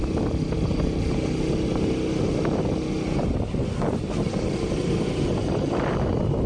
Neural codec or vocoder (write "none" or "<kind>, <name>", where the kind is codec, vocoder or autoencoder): none